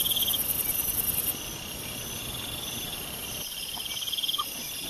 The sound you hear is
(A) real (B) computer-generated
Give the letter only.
B